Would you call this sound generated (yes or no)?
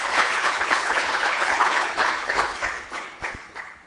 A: yes